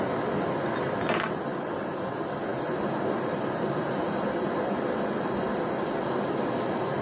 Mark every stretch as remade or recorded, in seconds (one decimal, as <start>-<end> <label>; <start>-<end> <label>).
0.0-7.0 recorded